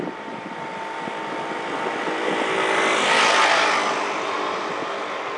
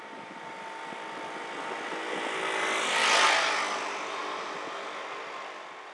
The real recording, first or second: second